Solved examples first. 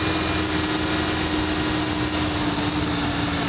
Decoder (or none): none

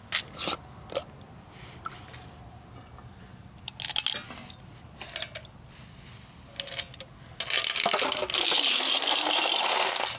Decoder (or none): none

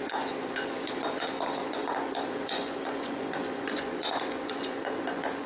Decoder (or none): vocoder, Vocos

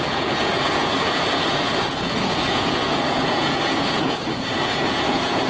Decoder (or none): vocoder, Vocos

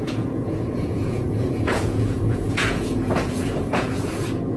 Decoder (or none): vocoder, Vocos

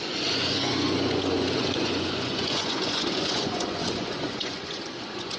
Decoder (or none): vocoder, Vocos